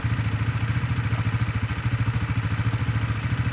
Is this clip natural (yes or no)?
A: yes